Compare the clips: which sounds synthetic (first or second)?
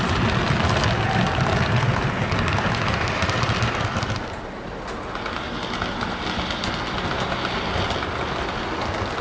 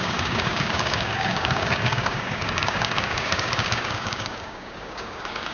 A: second